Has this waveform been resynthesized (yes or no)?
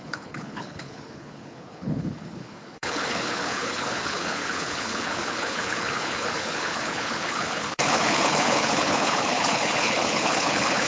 yes